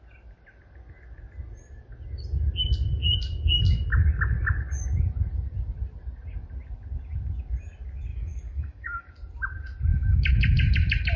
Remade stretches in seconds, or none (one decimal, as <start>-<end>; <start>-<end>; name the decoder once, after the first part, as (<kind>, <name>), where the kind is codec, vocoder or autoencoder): 8.1-9.1 (autoencoder, DAC-VAE); 9.9-11.2